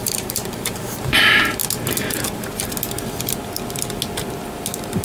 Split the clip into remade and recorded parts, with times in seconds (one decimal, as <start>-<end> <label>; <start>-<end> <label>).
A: 0.0-1.6 remade; 1.6-4.6 recorded; 4.6-5.0 remade